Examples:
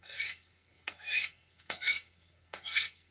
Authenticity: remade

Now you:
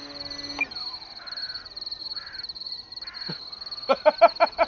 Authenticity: recorded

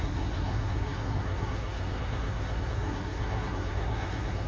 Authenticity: remade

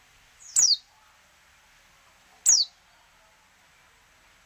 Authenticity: recorded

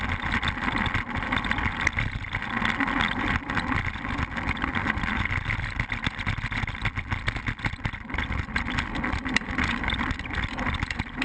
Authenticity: recorded